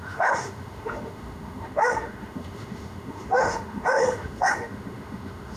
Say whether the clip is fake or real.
fake